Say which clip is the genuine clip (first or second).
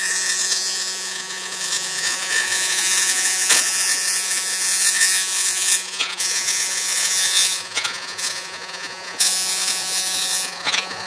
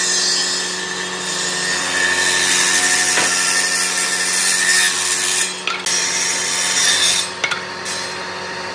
second